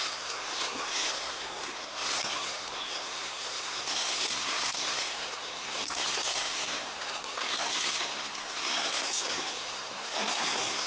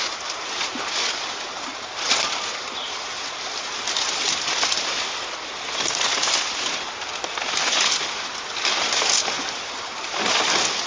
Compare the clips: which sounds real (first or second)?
second